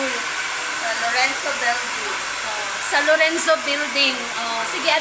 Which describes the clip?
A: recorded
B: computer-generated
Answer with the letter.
A